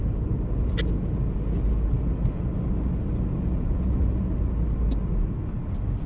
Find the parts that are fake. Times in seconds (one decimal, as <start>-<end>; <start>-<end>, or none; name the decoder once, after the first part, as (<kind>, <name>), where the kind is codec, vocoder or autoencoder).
none